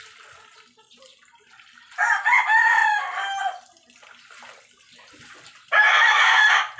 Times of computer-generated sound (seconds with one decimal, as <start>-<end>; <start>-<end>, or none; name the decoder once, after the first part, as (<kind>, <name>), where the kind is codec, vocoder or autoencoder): none